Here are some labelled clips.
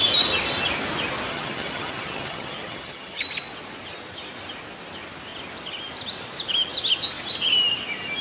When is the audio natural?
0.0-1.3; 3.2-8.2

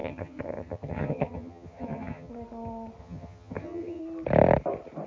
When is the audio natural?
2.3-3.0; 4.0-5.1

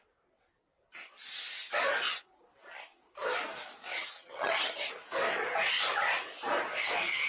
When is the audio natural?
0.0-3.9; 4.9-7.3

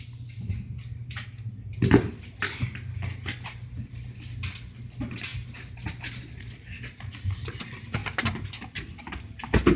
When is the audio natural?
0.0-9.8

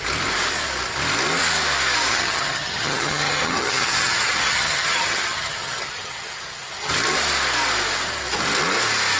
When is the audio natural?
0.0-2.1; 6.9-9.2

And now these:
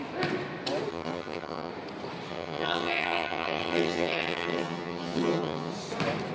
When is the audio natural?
0.0-0.9; 1.7-2.3; 5.7-6.3

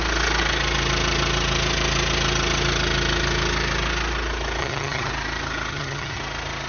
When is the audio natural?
0.0-4.6; 5.1-5.7; 6.2-6.7

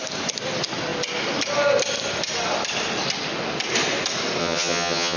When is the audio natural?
0.0-4.4